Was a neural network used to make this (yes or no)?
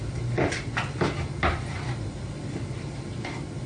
no